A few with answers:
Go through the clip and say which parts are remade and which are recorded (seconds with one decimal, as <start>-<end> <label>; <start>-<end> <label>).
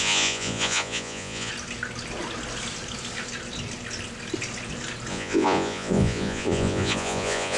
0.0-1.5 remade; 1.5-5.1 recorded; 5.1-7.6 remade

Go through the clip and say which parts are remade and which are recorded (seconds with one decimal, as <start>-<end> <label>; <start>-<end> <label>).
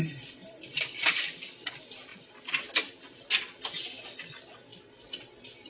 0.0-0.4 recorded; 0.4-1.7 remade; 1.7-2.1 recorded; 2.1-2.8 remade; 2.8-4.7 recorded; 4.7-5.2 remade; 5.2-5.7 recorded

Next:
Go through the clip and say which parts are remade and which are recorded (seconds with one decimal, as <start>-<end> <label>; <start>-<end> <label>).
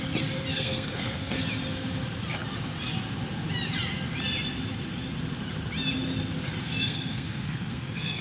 0.0-0.5 recorded; 0.5-1.4 remade; 1.4-6.6 recorded; 6.6-8.2 remade